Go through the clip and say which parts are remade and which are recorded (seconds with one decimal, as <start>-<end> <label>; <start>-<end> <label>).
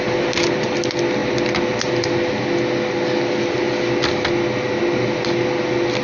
0.0-6.0 recorded